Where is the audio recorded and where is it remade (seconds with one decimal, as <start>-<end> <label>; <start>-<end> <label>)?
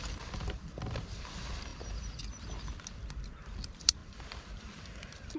0.0-4.0 recorded; 4.0-5.4 remade